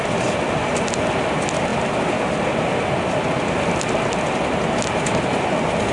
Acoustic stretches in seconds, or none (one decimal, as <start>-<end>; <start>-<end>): 0.0-5.9